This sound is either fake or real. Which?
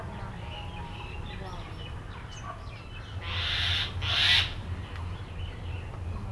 real